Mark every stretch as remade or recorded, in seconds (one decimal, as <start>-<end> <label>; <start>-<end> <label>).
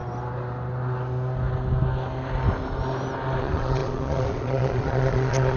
0.0-3.4 recorded; 3.4-5.6 remade